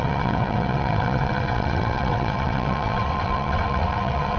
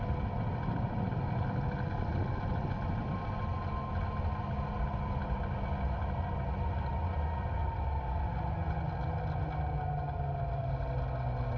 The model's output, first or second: first